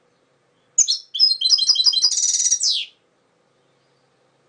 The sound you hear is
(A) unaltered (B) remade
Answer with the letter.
A